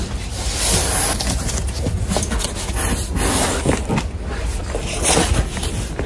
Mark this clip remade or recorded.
recorded